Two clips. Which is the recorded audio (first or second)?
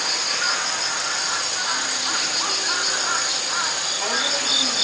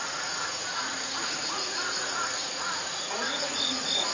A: first